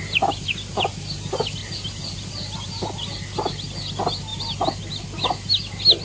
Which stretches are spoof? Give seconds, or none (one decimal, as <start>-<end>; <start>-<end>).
none